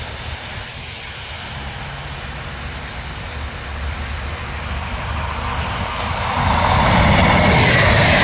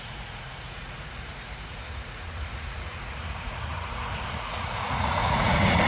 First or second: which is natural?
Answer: first